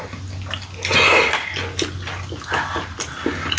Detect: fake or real real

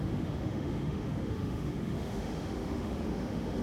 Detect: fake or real fake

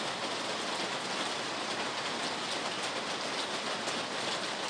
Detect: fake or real real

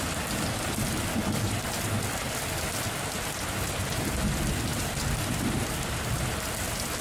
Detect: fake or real real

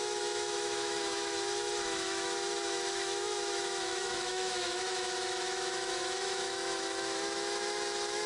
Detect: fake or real fake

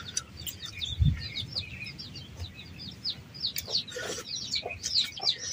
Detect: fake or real real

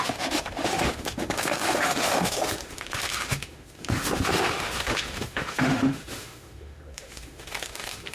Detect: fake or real fake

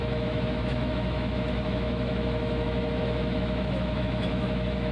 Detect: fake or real fake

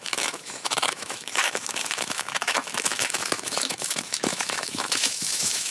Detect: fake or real fake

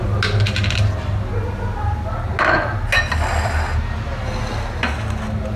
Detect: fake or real real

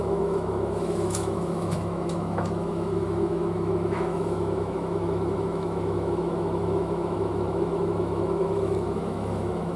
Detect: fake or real fake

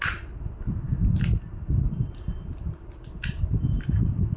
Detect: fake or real real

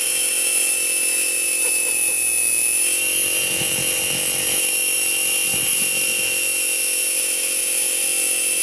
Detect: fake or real fake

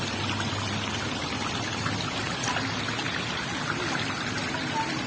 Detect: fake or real real